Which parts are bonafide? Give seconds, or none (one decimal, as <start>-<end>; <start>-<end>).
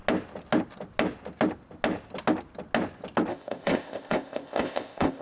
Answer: 0.0-3.3